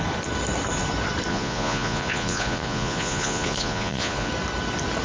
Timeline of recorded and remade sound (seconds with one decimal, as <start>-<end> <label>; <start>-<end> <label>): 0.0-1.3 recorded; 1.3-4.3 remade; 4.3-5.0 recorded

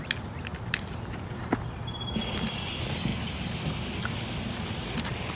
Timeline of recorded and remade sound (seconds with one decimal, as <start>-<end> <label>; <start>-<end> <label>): 0.0-5.4 recorded

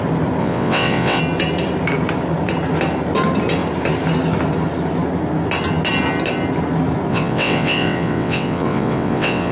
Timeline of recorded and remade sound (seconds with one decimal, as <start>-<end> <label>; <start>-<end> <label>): 0.0-0.4 recorded; 0.4-1.2 remade; 1.2-7.1 recorded; 7.1-9.5 remade

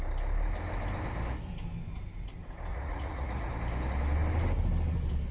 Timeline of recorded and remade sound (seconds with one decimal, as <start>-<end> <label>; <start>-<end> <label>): 0.0-2.7 recorded; 2.7-3.5 remade; 3.5-5.3 recorded